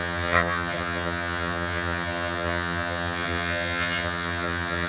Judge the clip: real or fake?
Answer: fake